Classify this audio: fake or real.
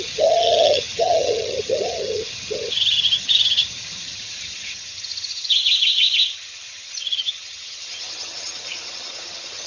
fake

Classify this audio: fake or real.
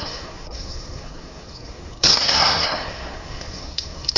fake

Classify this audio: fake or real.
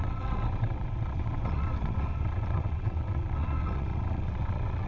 fake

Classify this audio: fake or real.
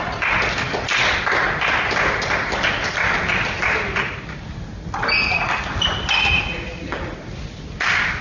real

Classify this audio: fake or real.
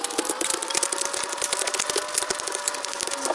fake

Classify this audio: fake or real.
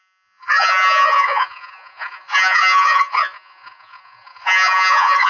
fake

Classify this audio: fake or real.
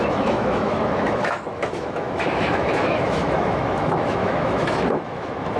fake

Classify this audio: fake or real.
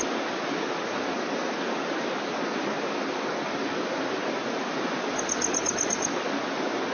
real